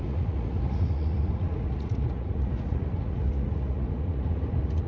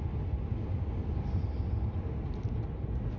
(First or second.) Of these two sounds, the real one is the second